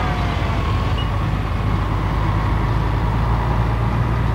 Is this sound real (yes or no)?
yes